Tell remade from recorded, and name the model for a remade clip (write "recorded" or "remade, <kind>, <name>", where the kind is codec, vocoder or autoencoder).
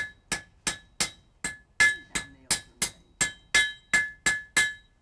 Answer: recorded